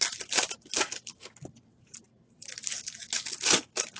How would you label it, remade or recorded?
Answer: recorded